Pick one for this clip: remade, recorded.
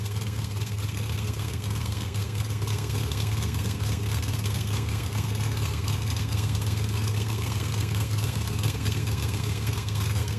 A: remade